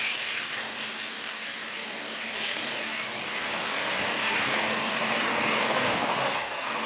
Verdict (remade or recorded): remade